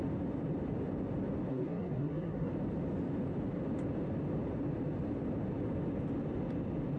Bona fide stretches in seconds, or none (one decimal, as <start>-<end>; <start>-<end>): 0.0-1.5; 2.5-7.0